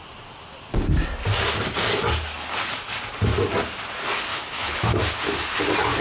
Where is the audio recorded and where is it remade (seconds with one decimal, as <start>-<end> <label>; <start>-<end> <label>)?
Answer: 0.0-4.3 recorded; 4.3-5.0 remade; 5.0-6.0 recorded